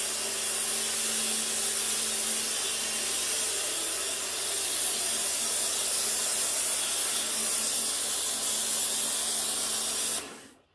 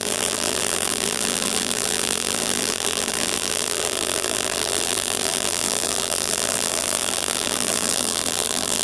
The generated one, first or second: second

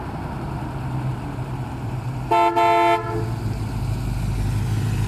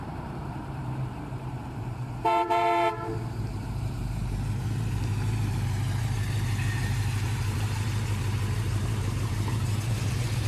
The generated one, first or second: second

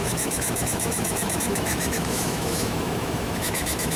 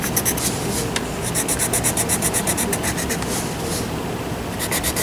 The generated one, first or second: first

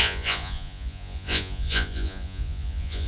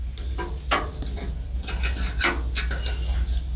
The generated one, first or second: first